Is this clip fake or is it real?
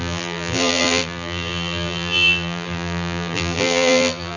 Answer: fake